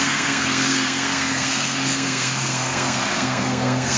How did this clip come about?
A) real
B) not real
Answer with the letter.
B